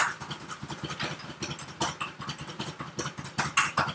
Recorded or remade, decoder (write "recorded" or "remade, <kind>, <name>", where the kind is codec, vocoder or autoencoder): recorded